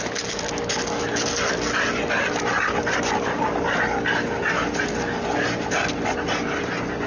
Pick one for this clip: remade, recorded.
recorded